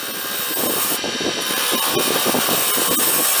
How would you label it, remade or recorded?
recorded